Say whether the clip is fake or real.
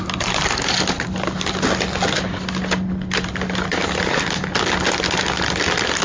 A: real